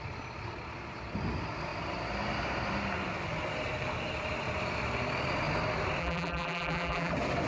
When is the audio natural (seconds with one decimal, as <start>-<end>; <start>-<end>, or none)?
0.0-6.0; 7.1-7.5